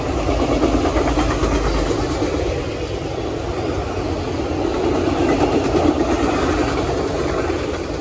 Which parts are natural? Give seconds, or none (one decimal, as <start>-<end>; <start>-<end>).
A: 0.0-8.0